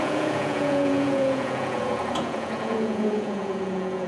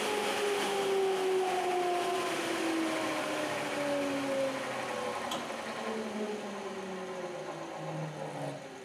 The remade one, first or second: first